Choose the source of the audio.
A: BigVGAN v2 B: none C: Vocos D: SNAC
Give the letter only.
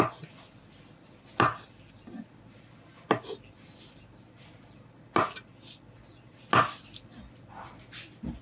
B